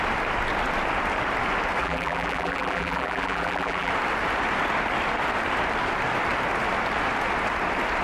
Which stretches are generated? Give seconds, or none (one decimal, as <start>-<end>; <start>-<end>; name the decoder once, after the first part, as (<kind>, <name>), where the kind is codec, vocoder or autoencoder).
1.8-3.9 (vocoder, BigVGAN v2)